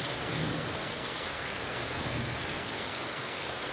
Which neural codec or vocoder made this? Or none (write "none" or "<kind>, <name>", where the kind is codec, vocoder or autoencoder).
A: codec, SNAC